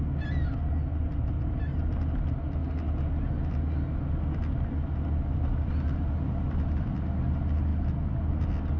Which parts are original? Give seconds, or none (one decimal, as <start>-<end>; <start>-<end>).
0.0-8.8